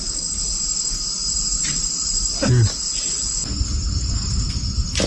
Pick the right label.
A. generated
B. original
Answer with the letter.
B